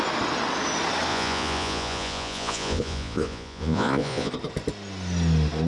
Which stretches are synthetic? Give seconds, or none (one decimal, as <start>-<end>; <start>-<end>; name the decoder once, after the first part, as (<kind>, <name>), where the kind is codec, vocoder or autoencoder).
1.1-4.3 (vocoder, Vocos)